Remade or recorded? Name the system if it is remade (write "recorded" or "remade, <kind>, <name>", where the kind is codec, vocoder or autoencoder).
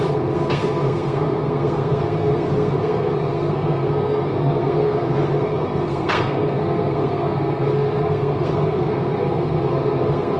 remade, codec, SNAC